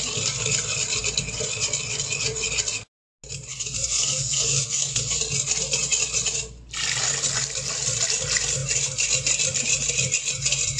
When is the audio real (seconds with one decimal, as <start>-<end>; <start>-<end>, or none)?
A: 0.0-3.5; 5.2-10.8